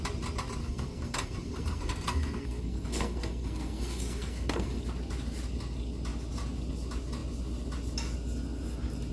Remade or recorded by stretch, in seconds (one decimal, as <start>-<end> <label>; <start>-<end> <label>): 0.0-0.6 recorded; 0.6-4.8 remade; 4.8-9.1 recorded